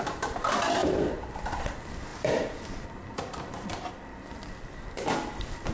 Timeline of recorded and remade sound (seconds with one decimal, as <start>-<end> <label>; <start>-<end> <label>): 0.0-0.8 recorded; 0.8-1.5 remade; 1.5-2.1 recorded; 2.1-3.9 remade; 3.9-5.7 recorded